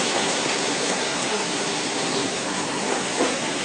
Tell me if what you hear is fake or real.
fake